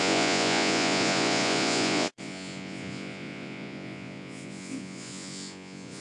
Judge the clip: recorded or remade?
remade